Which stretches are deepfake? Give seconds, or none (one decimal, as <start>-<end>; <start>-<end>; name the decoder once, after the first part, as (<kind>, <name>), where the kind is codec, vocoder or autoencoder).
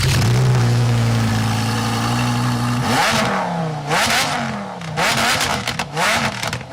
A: 0.5-1.3 (autoencoder, DAC-VAE); 5.5-6.2